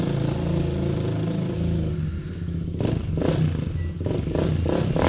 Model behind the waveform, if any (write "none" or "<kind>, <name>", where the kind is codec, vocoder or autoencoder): none